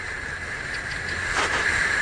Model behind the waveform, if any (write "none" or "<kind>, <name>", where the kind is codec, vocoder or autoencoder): none